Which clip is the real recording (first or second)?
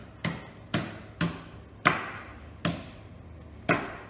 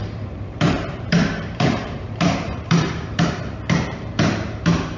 first